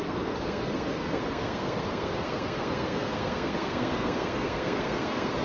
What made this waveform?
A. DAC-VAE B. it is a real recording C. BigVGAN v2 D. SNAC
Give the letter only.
D